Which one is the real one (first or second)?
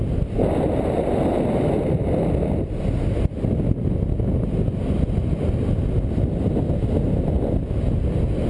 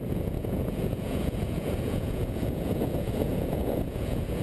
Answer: first